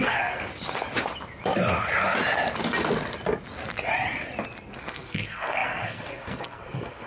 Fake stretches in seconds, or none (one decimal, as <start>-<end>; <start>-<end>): 0.0-0.5; 4.8-7.1